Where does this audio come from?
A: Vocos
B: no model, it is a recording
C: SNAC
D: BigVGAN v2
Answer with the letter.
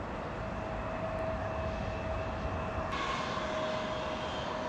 B